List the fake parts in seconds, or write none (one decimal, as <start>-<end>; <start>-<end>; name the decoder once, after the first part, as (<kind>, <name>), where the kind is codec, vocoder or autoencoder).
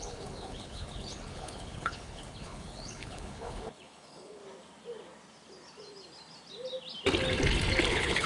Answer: 0.0-4.4 (codec, HILCodec); 7.9-8.3